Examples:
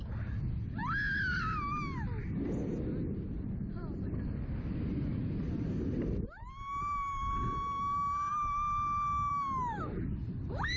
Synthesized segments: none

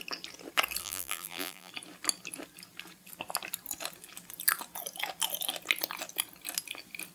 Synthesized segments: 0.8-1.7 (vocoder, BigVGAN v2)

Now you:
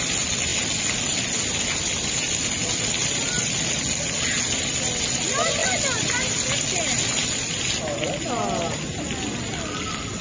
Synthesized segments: 3.0-3.8 (vocoder, BigVGAN v2)